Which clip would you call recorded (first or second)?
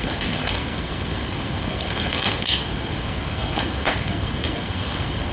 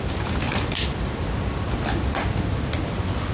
second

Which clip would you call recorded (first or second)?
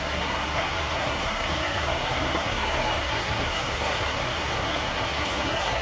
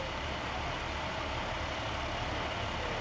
second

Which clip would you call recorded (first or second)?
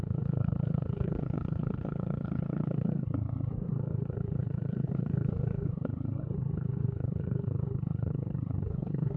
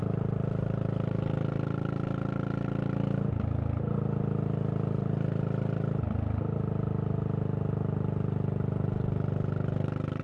second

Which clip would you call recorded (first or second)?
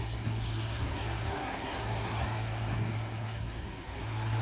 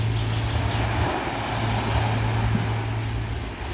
second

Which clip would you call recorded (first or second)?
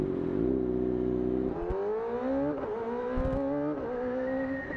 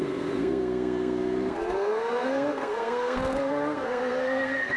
first